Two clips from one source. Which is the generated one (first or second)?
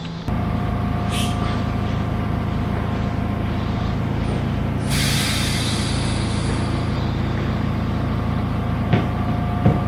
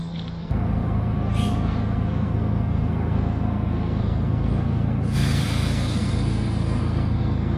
second